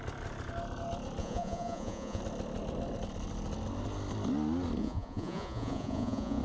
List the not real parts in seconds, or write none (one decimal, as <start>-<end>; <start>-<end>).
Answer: 1.2-2.2; 4.8-6.4